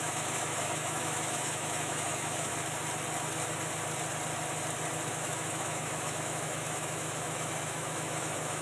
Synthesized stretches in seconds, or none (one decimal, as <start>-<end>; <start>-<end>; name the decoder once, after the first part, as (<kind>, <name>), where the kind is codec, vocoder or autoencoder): 0.0-2.5 (autoencoder, DAC-VAE); 5.1-8.6